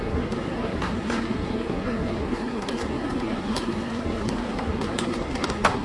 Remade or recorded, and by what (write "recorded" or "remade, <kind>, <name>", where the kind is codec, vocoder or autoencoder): remade, codec, SNAC